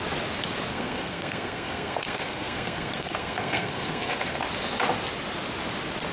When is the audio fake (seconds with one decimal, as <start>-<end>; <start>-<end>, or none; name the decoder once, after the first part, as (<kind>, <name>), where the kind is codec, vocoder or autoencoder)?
0.7-4.4 (codec, SNAC)